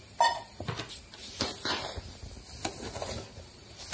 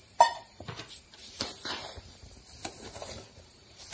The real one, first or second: first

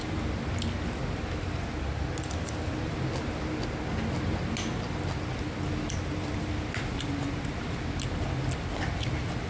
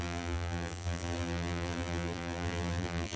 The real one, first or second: first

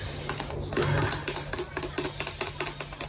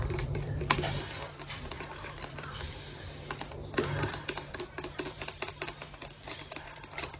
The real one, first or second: first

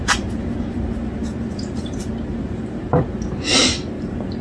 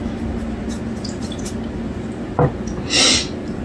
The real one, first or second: second